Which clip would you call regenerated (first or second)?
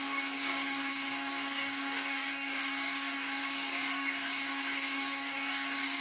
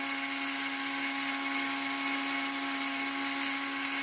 first